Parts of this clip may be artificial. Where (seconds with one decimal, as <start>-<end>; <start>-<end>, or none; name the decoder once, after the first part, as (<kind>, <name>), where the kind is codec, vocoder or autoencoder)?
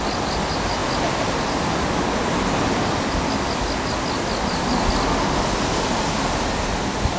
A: none